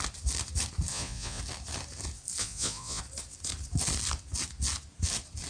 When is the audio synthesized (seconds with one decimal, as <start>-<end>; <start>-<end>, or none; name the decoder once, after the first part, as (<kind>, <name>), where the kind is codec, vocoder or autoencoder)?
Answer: 0.9-1.4 (vocoder, Vocos); 2.4-3.0

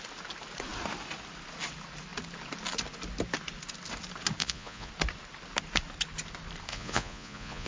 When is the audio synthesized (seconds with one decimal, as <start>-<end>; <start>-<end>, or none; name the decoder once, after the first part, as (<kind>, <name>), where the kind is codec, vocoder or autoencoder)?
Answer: 4.4-4.9 (vocoder, Vocos); 6.7-7.7

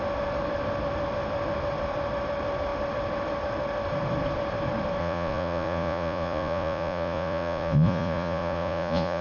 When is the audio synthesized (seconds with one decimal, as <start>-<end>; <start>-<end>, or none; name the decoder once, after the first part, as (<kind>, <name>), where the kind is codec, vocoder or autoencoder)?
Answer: 5.0-9.2 (vocoder, Vocos)

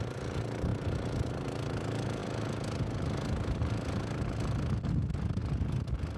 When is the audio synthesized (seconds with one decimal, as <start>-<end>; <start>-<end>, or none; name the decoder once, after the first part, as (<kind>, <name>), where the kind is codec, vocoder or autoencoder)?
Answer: none

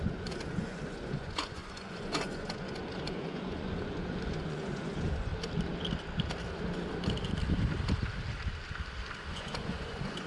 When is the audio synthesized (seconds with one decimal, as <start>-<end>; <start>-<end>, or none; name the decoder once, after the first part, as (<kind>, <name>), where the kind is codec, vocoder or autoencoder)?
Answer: 0.0-5.3 (vocoder, Vocos); 9.3-10.3